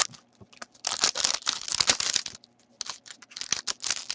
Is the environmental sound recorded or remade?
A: recorded